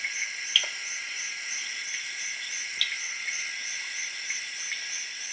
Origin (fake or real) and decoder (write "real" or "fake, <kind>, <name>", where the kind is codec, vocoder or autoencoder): real